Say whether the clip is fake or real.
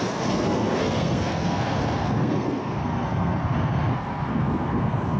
fake